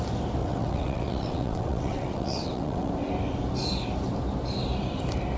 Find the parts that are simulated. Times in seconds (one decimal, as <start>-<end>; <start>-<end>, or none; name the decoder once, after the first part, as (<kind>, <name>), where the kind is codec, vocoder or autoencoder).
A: 0.4-2.9 (vocoder, WaveNeXt)